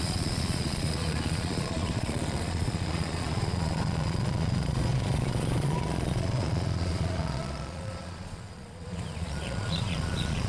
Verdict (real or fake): fake